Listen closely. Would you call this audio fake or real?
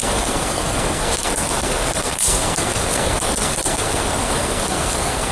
fake